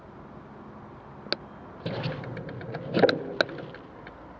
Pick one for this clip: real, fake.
real